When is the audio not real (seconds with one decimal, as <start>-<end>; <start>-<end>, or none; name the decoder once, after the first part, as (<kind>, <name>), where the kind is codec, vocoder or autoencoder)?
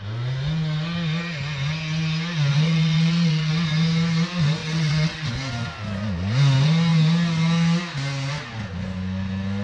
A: 2.5-3.5 (vocoder, WaveNeXt); 4.6-5.3